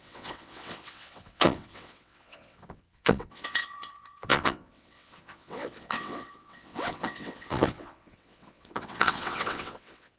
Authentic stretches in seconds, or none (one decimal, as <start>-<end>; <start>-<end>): none